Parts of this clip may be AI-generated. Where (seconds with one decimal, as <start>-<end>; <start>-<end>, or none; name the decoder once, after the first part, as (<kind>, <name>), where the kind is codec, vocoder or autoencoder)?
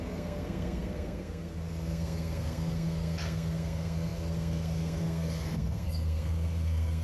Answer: 0.0-7.0 (codec, SNAC)